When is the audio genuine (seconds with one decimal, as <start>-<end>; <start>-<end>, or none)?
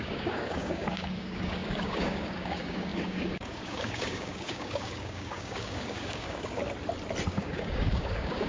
6.6-7.3